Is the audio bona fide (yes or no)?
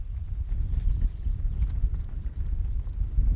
yes